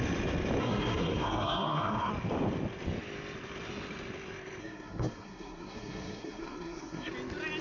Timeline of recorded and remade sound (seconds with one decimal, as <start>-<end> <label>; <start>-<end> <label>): 0.0-0.6 recorded; 0.6-2.1 remade; 2.1-4.6 recorded; 4.6-7.1 remade; 7.1-7.6 recorded